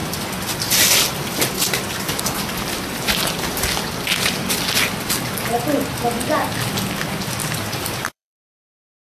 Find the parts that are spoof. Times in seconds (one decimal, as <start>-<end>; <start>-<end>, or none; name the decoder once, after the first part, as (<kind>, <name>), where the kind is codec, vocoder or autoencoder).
7.4-9.2 (vocoder, BigVGAN v2)